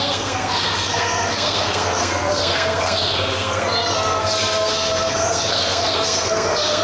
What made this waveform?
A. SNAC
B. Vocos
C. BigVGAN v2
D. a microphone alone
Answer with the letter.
A